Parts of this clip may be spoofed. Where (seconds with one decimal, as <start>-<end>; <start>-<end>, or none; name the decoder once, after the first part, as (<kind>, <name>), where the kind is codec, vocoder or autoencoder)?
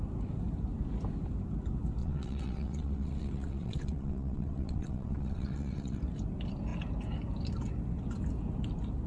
2.0-6.0 (vocoder, WaveNeXt)